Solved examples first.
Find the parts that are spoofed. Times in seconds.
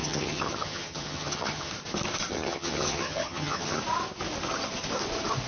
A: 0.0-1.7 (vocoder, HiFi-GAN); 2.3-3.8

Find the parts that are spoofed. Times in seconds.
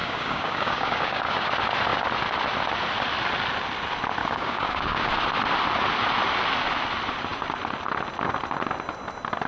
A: 0.0-1.5 (codec, DAC); 4.2-5.1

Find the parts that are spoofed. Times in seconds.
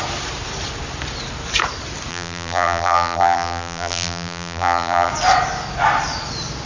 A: 2.1-5.1 (vocoder, BigVGAN v2)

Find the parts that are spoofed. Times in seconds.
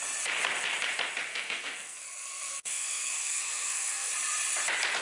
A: 1.3-4.1 (codec, SNAC)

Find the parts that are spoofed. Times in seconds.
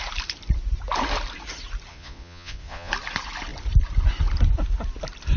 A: 1.9-2.9 (vocoder, Vocos)